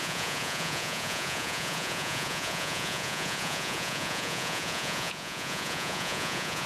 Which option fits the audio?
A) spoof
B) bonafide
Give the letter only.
A